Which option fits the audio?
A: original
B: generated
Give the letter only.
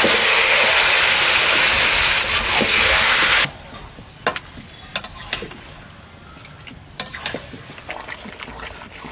A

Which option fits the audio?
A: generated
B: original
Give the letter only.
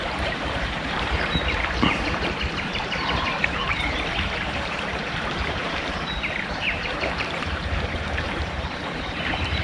A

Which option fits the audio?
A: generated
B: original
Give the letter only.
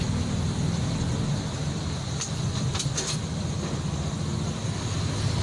B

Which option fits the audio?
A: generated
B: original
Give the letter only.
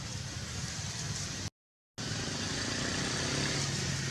B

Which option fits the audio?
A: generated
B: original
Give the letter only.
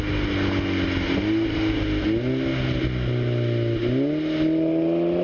B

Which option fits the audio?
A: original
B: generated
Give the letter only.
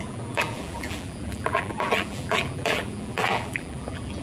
B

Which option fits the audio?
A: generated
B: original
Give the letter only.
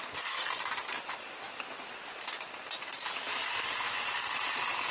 B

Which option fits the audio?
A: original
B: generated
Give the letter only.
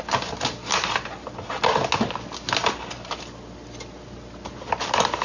A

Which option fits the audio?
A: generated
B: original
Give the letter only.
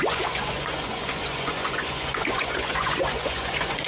A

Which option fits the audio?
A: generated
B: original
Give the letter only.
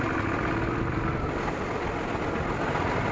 B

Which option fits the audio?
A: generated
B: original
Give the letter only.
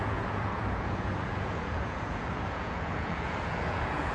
A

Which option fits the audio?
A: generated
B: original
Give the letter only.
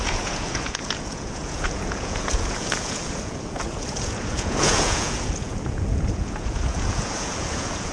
A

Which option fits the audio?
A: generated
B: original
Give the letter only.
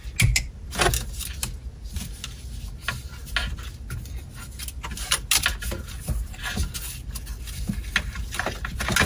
B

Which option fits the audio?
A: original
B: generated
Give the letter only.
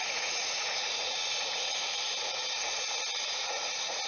B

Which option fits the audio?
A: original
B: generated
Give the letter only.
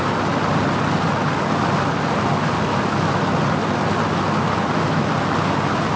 A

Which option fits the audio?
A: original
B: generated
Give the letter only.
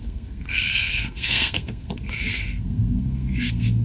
B